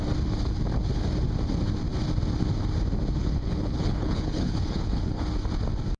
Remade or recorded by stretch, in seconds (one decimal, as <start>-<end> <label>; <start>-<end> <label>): 0.0-3.2 recorded; 3.2-5.2 remade; 5.2-6.0 recorded